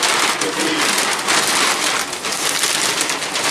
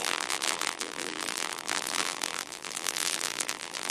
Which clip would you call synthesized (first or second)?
second